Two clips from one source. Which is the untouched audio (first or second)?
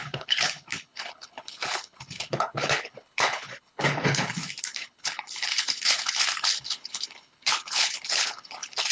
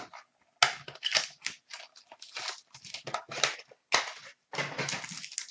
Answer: second